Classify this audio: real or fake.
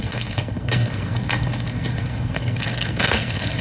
fake